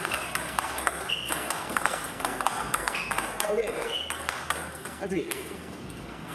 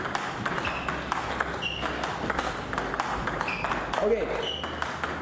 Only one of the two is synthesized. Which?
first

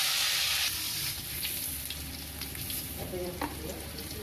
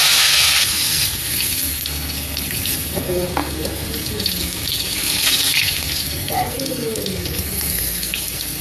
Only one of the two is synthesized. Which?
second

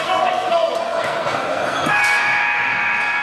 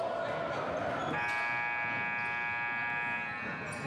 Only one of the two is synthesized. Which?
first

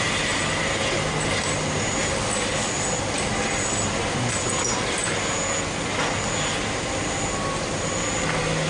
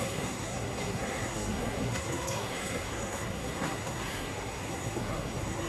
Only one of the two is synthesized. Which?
second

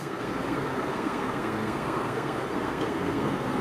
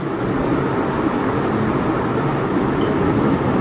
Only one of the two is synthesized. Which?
first